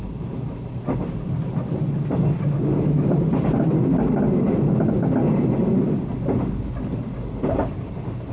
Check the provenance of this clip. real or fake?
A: real